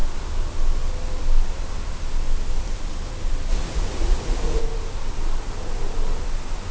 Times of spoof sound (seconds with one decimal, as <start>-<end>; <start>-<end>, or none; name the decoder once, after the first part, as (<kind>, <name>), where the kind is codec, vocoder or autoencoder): 3.5-4.6 (vocoder, Vocos)